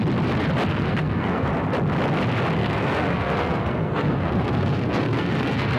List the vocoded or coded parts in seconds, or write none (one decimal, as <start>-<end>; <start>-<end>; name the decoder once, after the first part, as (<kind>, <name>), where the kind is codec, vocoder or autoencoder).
0.7-1.5 (codec, SNAC); 2.6-5.8